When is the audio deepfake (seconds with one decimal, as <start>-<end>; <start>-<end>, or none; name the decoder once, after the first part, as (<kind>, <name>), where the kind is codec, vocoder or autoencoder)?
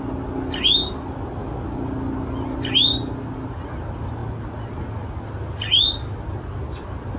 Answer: none